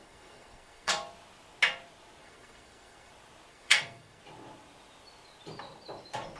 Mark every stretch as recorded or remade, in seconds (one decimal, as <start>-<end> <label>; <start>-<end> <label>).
0.0-0.9 remade; 0.9-2.2 recorded; 2.2-3.1 remade; 3.1-3.5 recorded; 3.5-4.2 remade; 4.2-6.4 recorded